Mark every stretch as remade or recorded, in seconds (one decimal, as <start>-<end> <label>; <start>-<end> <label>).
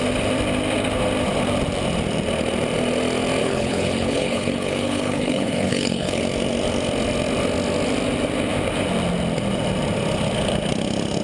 0.0-3.4 recorded; 3.4-6.2 remade; 6.2-11.2 recorded